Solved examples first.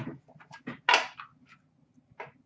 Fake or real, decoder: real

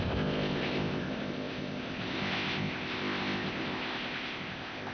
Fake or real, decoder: fake, codec, ZipCodec